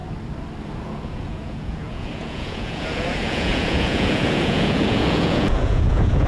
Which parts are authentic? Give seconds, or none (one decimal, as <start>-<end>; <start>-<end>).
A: 0.0-0.8